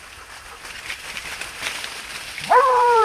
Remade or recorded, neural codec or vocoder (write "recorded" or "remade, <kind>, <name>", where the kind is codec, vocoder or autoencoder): remade, vocoder, BigVGAN v2